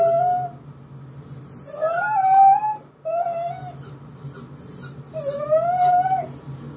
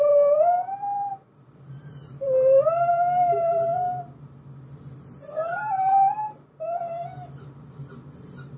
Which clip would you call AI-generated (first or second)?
second